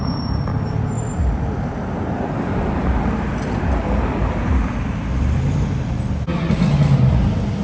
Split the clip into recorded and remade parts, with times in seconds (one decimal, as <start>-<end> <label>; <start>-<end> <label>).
0.0-7.6 recorded